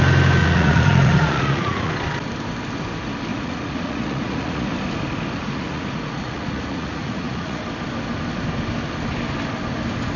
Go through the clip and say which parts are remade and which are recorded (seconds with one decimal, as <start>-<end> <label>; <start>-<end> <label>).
0.0-0.4 recorded; 0.4-1.9 remade; 1.9-3.3 recorded; 3.3-4.7 remade; 4.7-5.4 recorded; 5.4-7.6 remade; 7.6-10.2 recorded